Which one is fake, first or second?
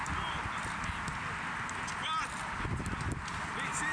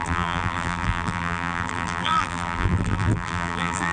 second